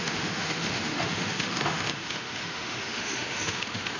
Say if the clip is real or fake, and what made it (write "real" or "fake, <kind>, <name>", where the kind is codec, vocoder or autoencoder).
fake, autoencoder, DAC-VAE